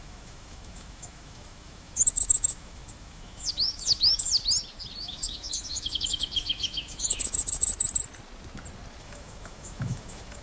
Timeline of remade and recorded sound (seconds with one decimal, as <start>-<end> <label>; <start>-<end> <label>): 0.0-4.3 remade; 4.3-5.0 recorded; 5.0-7.7 remade; 7.7-9.0 recorded; 9.0-10.4 remade